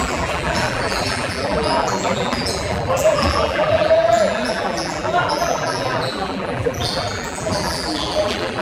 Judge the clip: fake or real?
fake